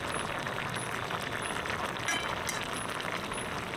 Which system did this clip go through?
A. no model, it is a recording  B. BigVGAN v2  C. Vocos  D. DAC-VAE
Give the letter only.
A